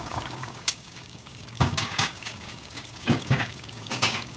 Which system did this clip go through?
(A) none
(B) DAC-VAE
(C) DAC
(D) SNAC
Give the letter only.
C